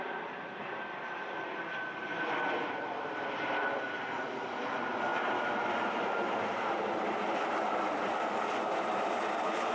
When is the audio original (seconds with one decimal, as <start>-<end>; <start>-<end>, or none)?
none